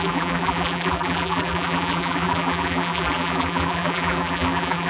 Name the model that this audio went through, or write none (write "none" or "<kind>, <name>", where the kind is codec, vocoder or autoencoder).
vocoder, BigVGAN v2